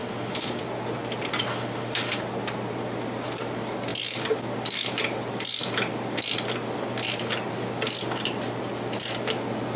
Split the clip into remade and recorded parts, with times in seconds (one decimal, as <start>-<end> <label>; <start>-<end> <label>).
0.0-0.6 remade; 0.6-1.5 recorded; 1.5-2.2 remade; 2.2-9.8 recorded